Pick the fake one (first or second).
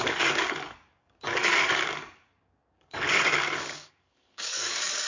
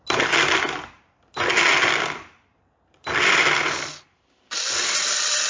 first